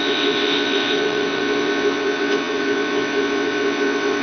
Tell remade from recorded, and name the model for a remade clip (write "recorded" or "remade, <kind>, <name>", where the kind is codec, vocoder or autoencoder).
remade, vocoder, WaveNeXt